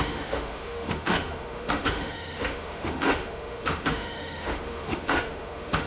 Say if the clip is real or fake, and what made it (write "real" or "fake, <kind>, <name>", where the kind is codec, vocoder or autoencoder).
fake, autoencoder, DAC-VAE